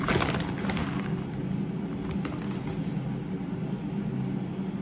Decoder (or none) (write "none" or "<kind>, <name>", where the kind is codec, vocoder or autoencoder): none